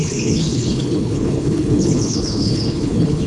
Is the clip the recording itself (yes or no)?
no